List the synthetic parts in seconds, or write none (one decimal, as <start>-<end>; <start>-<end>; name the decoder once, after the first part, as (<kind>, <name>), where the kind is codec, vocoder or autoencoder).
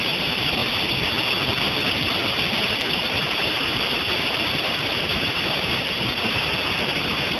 0.0-0.6 (vocoder, BigVGAN v2); 2.9-7.4